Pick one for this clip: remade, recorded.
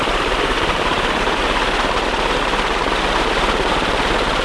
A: remade